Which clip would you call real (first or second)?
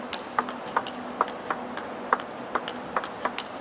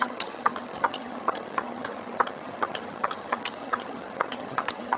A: first